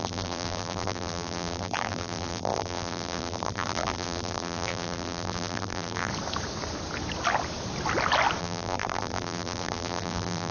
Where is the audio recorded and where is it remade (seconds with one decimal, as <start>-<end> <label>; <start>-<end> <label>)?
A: 0.0-6.1 remade; 6.1-8.4 recorded; 8.4-10.5 remade